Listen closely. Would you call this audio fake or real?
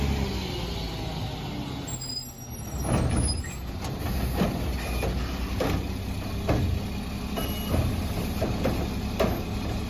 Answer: real